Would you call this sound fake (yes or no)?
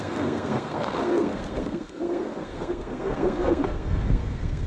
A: yes